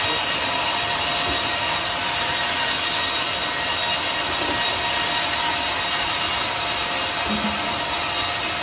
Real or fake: real